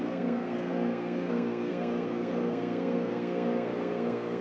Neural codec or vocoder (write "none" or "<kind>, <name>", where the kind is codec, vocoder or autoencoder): codec, SNAC